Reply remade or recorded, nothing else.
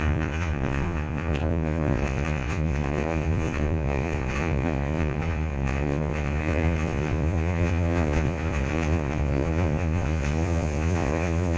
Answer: remade